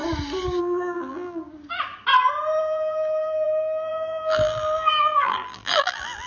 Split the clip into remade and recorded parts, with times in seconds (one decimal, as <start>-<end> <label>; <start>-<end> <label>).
0.0-0.6 recorded; 0.6-1.4 remade; 1.4-2.6 recorded; 2.6-6.3 remade